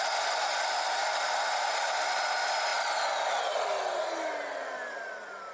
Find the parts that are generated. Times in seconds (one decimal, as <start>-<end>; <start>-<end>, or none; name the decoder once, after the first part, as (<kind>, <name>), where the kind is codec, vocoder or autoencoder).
none